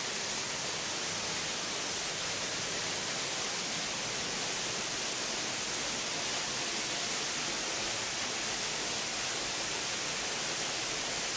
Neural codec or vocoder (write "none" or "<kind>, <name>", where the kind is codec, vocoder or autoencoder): none